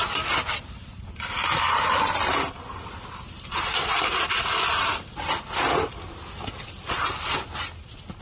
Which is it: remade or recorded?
remade